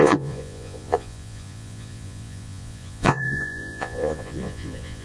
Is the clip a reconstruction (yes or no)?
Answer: yes